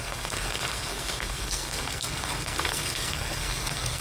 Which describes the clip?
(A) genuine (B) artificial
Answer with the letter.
B